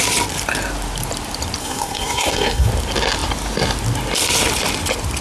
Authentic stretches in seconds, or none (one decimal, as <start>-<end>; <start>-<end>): 0.0-1.6; 2.7-5.2